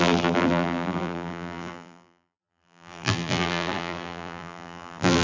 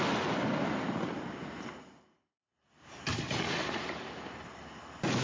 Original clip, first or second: second